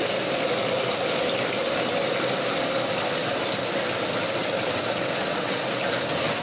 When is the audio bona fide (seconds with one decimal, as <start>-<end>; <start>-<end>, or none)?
0.0-4.4; 5.6-6.4